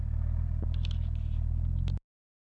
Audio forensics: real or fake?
real